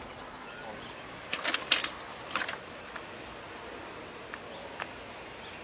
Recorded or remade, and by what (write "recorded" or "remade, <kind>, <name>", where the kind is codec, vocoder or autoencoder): recorded